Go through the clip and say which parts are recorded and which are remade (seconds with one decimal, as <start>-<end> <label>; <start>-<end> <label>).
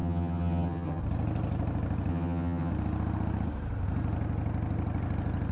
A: 0.0-1.0 remade; 1.0-2.1 recorded; 2.1-2.7 remade; 2.7-5.5 recorded